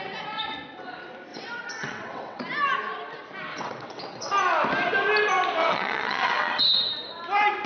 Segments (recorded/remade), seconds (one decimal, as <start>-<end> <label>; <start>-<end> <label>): 0.0-1.3 recorded; 1.3-2.4 remade; 2.4-3.5 recorded; 3.5-4.3 remade; 4.3-5.6 recorded; 5.6-6.6 remade; 6.6-7.7 recorded